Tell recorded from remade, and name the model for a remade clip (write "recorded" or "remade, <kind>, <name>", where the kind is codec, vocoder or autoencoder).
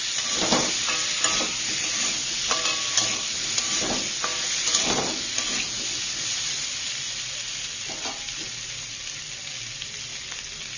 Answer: recorded